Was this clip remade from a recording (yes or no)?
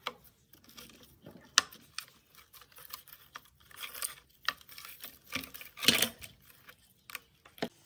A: no